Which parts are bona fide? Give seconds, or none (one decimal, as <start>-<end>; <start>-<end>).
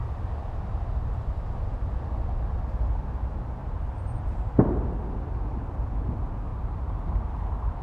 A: 0.0-3.6; 4.2-6.5